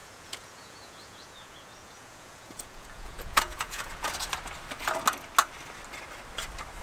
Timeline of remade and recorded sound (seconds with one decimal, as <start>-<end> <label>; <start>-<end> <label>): 0.0-4.1 remade; 4.1-6.8 recorded